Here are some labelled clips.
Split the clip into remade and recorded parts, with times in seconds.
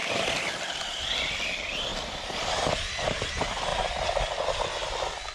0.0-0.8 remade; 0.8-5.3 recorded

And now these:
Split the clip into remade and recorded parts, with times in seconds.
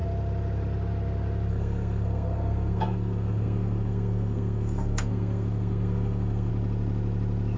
0.0-1.5 recorded; 1.5-6.5 remade; 6.5-7.6 recorded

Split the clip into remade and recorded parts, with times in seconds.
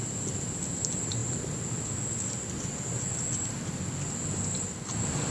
0.0-5.3 recorded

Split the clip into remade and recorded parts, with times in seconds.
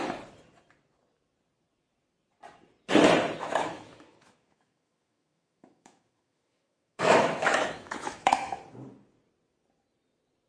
0.0-3.4 recorded; 3.4-8.6 remade; 8.6-10.5 recorded